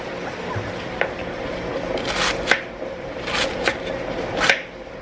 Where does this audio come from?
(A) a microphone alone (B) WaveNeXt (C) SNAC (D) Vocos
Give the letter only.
A